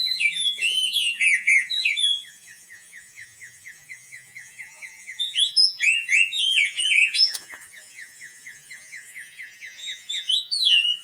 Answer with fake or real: fake